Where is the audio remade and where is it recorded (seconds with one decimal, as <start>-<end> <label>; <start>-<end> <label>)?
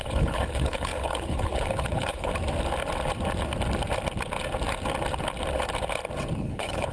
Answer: 0.0-2.3 remade; 2.3-6.4 recorded; 6.4-6.9 remade